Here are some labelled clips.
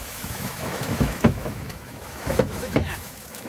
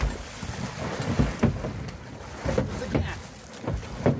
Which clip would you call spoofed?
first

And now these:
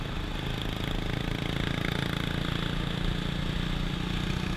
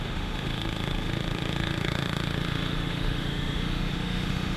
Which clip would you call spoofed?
second